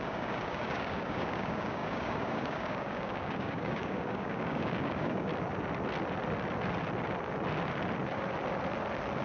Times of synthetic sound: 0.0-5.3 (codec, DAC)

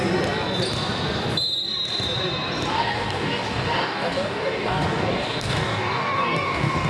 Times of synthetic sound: 2.7-6.9 (codec, DAC)